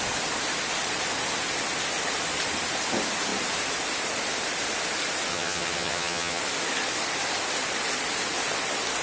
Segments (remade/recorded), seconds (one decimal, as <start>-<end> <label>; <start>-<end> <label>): 0.0-5.3 recorded; 5.3-6.4 remade; 6.4-9.0 recorded